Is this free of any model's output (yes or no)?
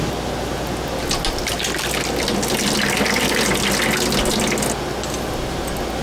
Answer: yes